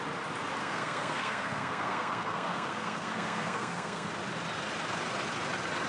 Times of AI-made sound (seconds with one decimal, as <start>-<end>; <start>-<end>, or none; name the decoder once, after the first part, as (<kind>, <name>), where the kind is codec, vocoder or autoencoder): 0.6-4.1 (codec, SNAC)